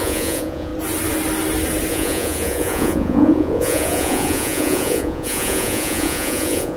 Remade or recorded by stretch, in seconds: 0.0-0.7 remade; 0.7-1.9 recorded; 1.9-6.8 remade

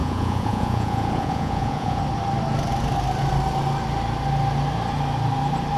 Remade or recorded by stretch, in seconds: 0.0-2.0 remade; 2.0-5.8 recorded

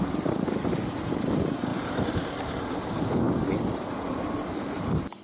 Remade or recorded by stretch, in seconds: 0.0-5.2 recorded